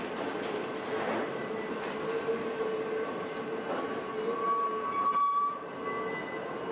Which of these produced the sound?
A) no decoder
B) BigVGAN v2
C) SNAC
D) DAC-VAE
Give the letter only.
A